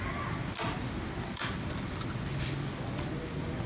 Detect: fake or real real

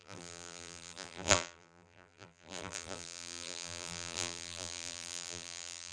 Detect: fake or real fake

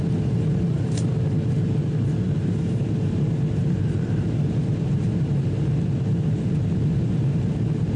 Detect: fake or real fake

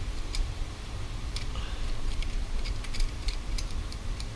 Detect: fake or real fake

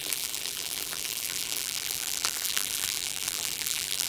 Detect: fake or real fake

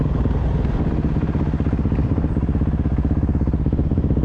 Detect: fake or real real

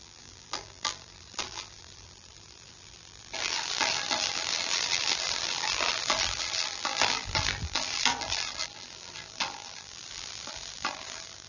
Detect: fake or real fake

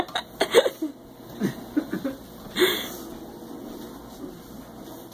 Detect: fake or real real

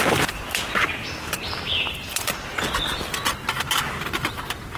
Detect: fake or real real